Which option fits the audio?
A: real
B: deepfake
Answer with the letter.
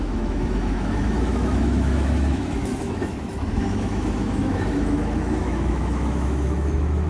B